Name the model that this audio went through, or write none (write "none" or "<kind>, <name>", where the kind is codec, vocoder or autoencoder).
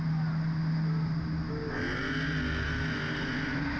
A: none